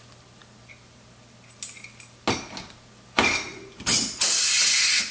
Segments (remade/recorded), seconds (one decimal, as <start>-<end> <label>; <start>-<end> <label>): 0.0-5.1 recorded